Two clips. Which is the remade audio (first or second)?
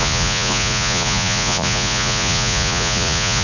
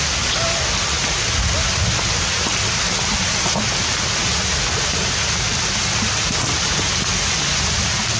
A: first